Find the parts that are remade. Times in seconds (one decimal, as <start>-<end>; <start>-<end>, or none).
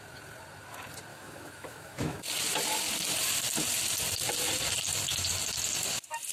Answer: 1.1-2.2